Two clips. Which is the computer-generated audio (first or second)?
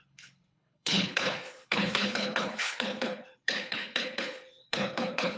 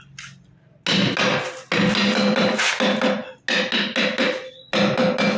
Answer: first